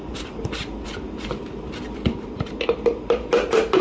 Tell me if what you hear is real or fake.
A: real